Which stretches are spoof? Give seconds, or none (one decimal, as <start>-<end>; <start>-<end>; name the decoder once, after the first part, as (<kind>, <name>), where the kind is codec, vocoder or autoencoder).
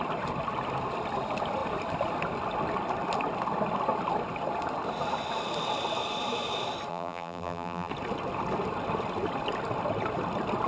6.9-7.9 (vocoder, BigVGAN v2)